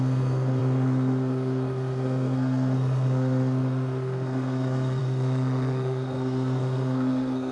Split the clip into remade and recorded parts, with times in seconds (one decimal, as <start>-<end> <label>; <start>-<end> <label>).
0.0-7.5 remade